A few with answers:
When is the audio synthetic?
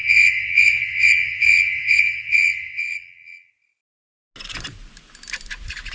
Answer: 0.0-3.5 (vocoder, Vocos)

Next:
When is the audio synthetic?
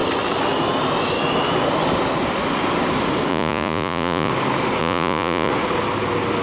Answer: 3.3-4.3 (vocoder, Vocos); 4.8-5.5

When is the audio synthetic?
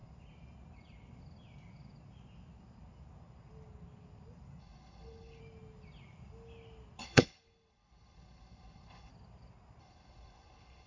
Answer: 4.6-5.4 (codec, HILCodec); 7.0-9.1; 9.8-10.9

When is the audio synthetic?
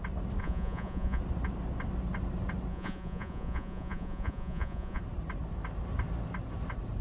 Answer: 0.4-1.2 (vocoder, Vocos); 2.7-5.0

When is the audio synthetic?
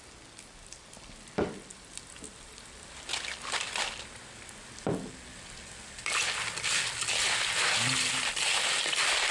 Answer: none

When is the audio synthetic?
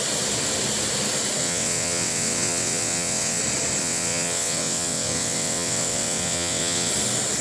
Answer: 1.4-3.4 (vocoder, WaveNeXt); 3.8-6.9